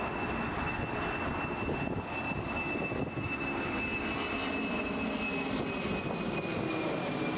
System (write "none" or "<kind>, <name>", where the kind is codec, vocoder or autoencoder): none